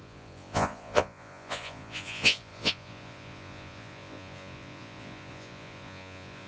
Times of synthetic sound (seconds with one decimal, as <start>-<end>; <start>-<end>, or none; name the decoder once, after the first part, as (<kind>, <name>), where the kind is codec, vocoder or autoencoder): 0.0-6.5 (vocoder, Vocos)